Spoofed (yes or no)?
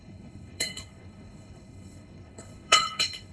yes